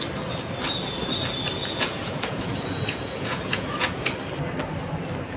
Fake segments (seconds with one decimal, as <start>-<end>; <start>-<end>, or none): 1.6-4.0